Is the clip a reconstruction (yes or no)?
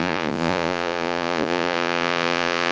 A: yes